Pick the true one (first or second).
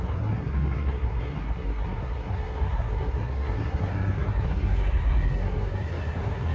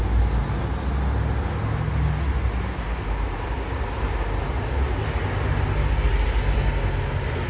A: second